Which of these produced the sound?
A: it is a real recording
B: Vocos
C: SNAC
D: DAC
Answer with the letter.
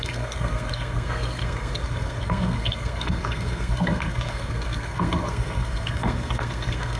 C